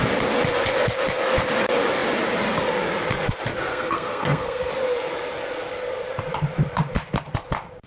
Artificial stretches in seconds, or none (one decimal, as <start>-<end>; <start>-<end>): 3.7-4.7